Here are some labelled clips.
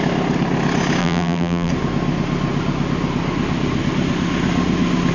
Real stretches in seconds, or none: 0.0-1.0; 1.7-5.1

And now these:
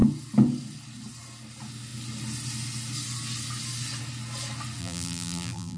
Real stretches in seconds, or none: 0.0-4.8

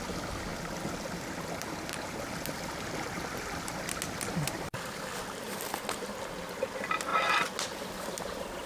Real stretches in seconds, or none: 0.0-8.7

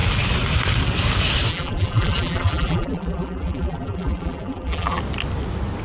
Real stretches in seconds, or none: 0.0-1.5; 5.0-5.8

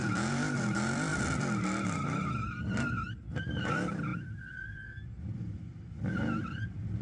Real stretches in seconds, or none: 1.1-3.4; 5.7-6.4

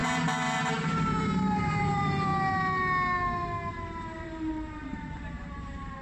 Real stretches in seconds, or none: 2.3-3.7